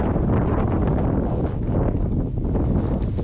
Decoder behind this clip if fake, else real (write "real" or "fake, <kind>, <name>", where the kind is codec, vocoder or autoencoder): real